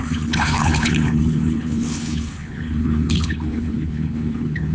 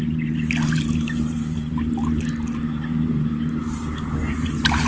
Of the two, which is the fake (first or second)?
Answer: first